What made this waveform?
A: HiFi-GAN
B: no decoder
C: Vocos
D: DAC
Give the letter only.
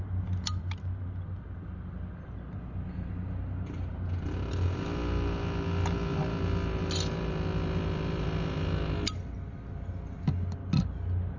B